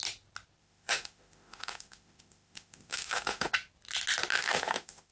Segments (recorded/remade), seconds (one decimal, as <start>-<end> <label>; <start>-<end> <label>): 0.0-0.6 recorded; 0.6-3.5 remade; 3.5-4.3 recorded; 4.3-5.1 remade